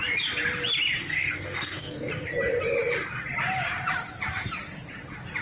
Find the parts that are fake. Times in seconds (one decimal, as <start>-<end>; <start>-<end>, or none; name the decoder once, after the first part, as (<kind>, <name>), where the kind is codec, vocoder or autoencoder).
1.0-2.1 (codec, SNAC)